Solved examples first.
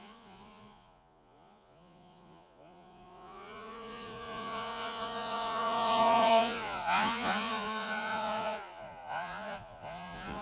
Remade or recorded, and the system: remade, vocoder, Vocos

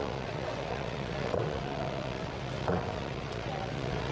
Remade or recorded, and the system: remade, vocoder, WaveNeXt